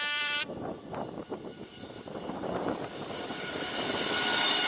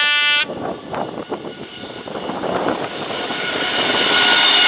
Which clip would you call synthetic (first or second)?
first